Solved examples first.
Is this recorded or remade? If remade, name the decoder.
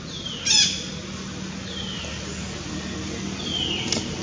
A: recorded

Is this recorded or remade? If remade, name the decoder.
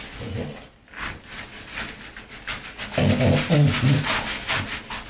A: recorded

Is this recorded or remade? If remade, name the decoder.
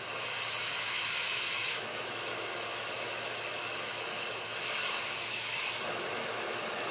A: remade, autoencoder, DAC-VAE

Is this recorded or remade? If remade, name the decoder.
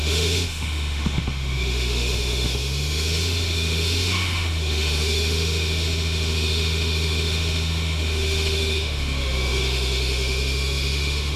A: remade, autoencoder, DAC-VAE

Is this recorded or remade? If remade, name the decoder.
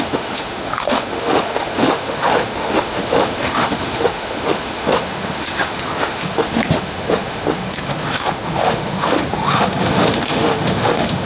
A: remade, autoencoder, DAC-VAE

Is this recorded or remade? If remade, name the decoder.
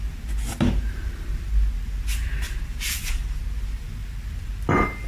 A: recorded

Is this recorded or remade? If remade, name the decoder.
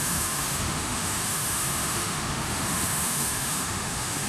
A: remade, autoencoder, DAC-VAE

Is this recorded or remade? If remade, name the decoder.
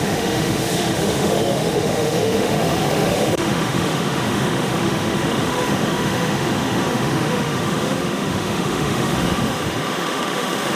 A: remade, autoencoder, DAC-VAE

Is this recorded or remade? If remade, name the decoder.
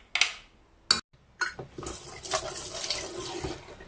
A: recorded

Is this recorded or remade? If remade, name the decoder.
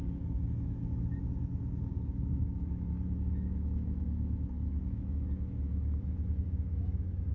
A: remade, autoencoder, DAC-VAE